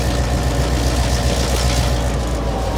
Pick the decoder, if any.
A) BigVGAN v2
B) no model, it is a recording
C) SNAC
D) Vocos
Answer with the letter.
B